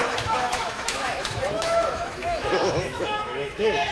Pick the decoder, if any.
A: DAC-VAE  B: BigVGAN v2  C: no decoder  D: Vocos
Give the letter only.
A